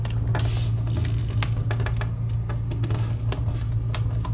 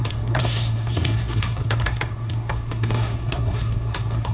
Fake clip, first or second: second